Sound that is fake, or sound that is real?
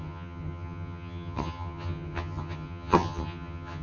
fake